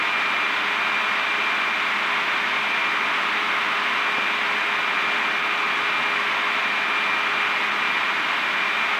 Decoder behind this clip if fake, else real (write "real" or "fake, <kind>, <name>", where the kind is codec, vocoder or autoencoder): real